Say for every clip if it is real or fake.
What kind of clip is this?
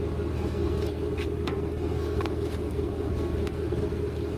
fake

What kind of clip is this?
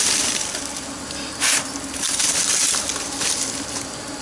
real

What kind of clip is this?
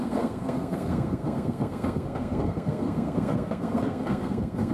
fake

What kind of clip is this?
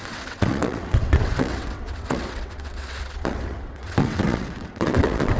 fake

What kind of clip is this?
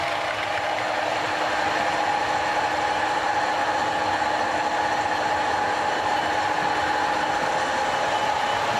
real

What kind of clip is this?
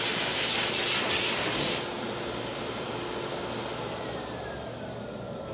real